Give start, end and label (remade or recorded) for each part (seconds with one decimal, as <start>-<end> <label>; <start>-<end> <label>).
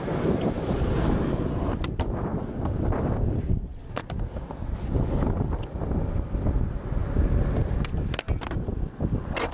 0.0-9.5 recorded